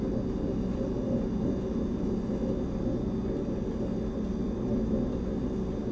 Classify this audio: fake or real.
real